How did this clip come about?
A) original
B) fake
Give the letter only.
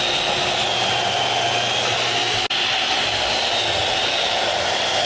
A